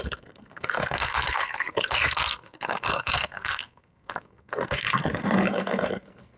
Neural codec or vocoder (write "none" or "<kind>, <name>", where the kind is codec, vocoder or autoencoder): codec, SNAC